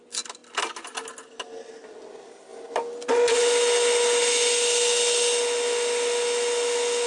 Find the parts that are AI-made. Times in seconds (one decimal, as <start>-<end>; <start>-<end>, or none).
none